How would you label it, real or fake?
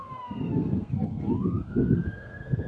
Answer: fake